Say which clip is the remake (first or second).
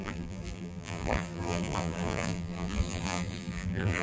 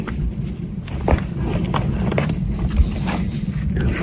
first